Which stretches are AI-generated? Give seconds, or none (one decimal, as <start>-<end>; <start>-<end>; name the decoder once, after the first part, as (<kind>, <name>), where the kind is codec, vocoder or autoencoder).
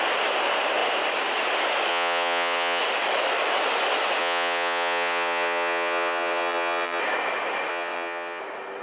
1.9-2.8 (vocoder, WaveNeXt); 4.2-7.0; 7.7-8.4